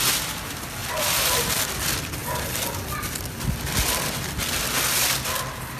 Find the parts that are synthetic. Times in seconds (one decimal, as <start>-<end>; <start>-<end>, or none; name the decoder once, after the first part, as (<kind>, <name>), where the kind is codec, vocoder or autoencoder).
0.8-1.5 (vocoder, BigVGAN v2)